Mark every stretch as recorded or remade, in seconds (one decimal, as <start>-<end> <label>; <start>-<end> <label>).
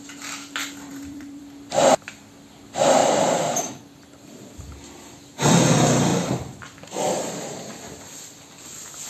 0.0-0.9 recorded; 0.9-1.4 remade; 1.4-3.0 recorded; 3.0-3.7 remade; 3.7-6.1 recorded; 6.1-7.7 remade; 7.7-9.1 recorded